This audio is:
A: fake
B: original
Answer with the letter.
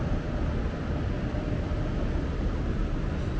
B